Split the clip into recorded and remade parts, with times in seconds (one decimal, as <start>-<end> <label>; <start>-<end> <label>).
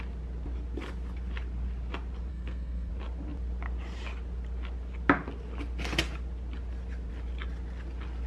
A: 0.0-2.3 recorded; 2.3-2.9 remade; 2.9-8.3 recorded